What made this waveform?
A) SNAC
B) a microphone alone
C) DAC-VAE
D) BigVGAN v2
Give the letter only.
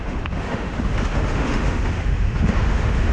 C